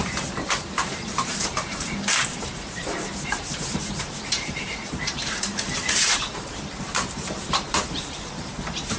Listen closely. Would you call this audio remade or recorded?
remade